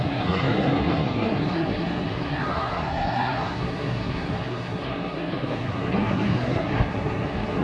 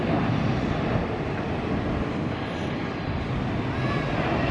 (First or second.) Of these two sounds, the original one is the second